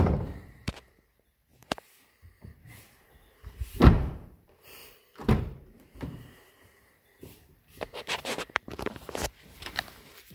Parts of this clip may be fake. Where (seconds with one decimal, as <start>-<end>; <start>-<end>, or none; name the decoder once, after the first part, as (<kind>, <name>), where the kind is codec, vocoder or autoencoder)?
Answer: 0.0-4.8 (vocoder, BigVGAN v2); 5.4-10.3